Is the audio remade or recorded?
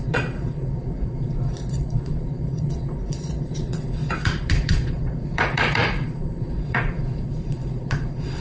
remade